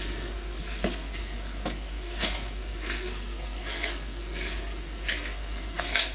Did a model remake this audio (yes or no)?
yes